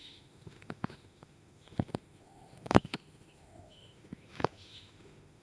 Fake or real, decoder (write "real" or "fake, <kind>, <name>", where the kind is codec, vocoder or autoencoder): fake, autoencoder, DAC-VAE